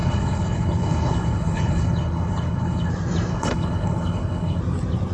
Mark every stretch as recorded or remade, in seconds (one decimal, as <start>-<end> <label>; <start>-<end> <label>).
0.0-2.9 remade; 2.9-3.3 recorded; 3.3-4.6 remade; 4.6-5.1 recorded